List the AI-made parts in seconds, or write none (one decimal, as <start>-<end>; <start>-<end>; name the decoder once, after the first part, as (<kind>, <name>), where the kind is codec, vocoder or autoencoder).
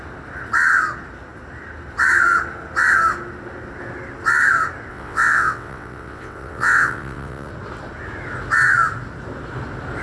4.9-7.5 (vocoder, WaveNeXt)